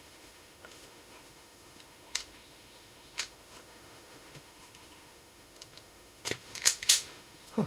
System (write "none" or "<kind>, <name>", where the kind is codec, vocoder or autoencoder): autoencoder, DAC-VAE